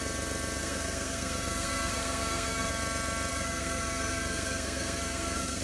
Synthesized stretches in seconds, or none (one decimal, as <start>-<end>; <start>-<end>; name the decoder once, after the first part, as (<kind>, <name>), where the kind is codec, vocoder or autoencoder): 0.6-2.7 (codec, SNAC); 3.3-5.6